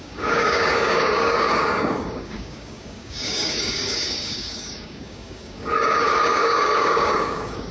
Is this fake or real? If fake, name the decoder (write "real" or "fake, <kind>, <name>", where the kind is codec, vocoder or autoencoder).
fake, codec, DAC